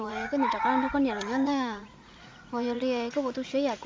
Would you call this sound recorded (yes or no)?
no